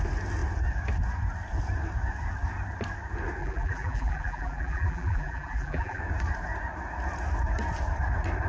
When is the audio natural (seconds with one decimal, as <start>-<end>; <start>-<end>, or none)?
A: 0.0-3.4; 6.0-8.5